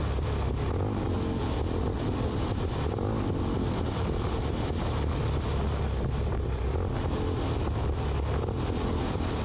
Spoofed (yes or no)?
no